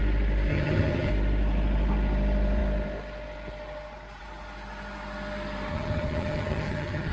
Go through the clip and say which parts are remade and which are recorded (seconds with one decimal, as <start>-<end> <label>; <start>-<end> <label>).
0.0-0.5 recorded; 0.5-1.1 remade; 1.1-5.7 recorded; 5.7-7.1 remade